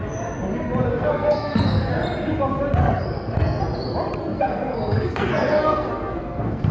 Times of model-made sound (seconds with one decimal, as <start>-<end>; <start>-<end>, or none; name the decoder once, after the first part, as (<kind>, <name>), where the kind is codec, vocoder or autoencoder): 0.9-1.9 (codec, SNAC); 2.8-3.6; 4.2-6.7